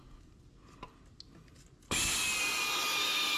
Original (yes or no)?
yes